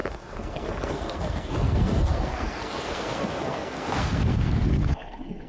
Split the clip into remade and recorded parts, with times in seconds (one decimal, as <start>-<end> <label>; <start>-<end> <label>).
0.0-5.5 remade